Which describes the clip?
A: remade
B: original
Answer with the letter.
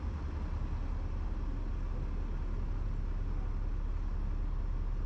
B